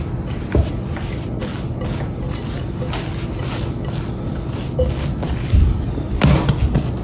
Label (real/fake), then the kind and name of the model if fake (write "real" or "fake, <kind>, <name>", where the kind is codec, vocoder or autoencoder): real